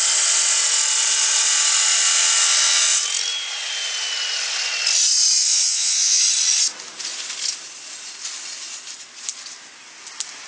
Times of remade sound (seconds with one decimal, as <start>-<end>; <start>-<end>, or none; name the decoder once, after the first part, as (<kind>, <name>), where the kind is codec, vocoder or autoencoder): 5.5-6.2 (vocoder, Vocos)